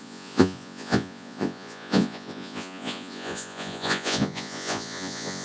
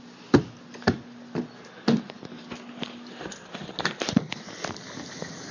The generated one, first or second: first